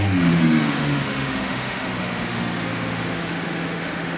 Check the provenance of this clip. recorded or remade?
remade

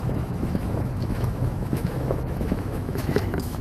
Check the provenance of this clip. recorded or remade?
remade